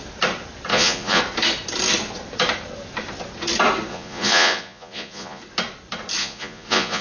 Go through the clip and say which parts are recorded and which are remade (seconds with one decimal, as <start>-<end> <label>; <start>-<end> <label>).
0.0-0.7 recorded; 0.7-1.2 remade; 1.2-3.9 recorded; 3.9-5.4 remade; 5.4-6.2 recorded; 6.2-7.0 remade